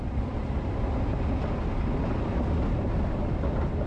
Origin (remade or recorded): recorded